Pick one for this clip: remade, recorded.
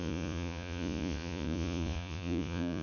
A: remade